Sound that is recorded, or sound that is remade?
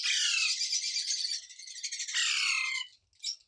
recorded